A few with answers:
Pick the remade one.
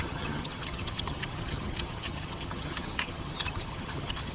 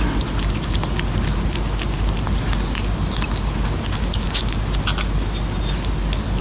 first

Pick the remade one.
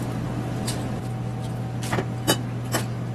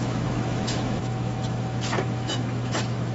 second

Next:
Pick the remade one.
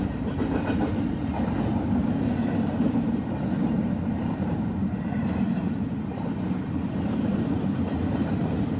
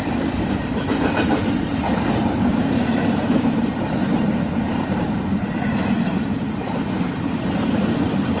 second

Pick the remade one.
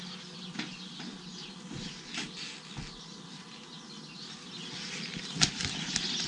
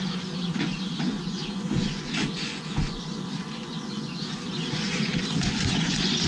second